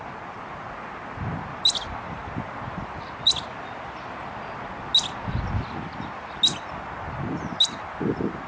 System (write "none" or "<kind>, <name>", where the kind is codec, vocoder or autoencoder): none